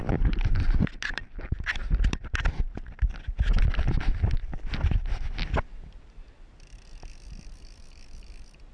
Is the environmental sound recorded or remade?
remade